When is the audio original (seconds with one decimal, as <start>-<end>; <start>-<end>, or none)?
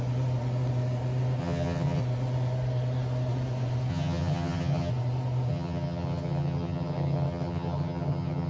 0.0-1.4; 2.0-3.9; 4.9-5.5